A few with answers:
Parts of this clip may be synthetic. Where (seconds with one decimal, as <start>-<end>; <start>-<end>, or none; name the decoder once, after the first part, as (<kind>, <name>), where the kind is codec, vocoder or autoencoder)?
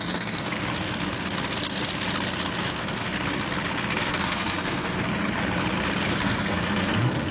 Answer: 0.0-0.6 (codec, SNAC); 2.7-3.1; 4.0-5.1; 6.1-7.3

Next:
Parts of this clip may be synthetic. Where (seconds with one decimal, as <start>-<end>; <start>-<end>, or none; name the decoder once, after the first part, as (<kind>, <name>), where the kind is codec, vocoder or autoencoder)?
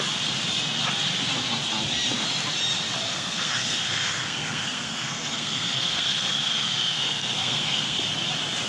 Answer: 3.1-8.0 (codec, SNAC)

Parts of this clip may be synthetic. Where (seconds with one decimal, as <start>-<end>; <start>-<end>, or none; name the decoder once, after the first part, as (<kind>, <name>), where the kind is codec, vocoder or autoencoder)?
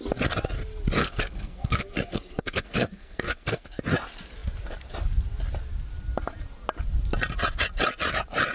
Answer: 1.0-3.8 (codec, SNAC)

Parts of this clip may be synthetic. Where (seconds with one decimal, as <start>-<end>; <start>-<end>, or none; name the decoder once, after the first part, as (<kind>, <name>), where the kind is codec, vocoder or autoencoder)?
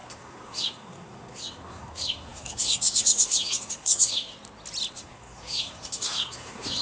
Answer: 0.0-4.3 (codec, SNAC); 4.9-6.8